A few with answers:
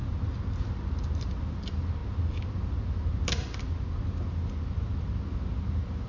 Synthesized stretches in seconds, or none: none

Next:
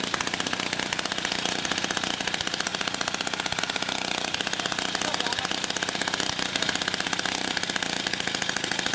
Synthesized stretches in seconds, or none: none

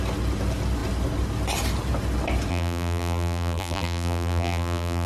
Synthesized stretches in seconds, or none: 2.5-5.1 (vocoder, BigVGAN v2)

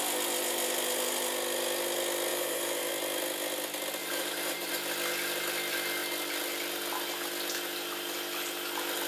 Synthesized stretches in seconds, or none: 2.3-2.9 (vocoder, BigVGAN v2); 4.0-4.7

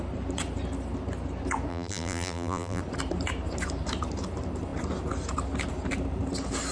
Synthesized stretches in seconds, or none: 1.7-2.8 (vocoder, BigVGAN v2)

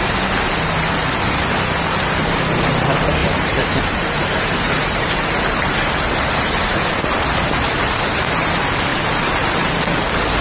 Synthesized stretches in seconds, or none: 3.2-7.2 (vocoder, BigVGAN v2); 8.9-9.7

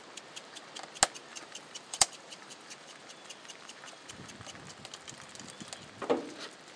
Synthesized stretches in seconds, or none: 1.2-4.3 (vocoder, BigVGAN v2)

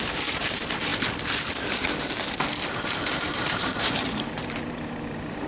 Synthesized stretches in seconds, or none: 0.0-0.9 (vocoder, BigVGAN v2); 2.7-5.5